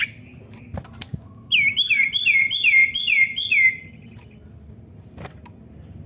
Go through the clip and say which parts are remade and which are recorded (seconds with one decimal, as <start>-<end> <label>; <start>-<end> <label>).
0.0-1.1 recorded; 1.1-2.0 remade; 2.0-6.1 recorded